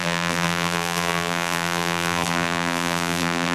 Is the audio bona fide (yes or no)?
no